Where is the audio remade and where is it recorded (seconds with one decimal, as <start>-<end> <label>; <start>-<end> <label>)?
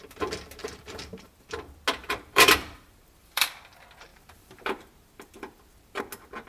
0.0-0.6 recorded; 0.6-1.4 remade; 1.4-2.0 recorded; 2.0-3.5 remade; 3.5-4.1 recorded; 4.1-6.0 remade; 6.0-6.5 recorded